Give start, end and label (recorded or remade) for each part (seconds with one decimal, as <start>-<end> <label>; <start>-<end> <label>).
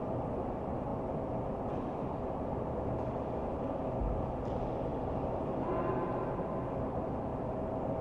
0.0-8.0 recorded